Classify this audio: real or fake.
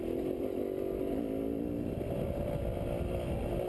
real